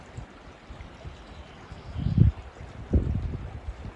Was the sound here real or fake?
real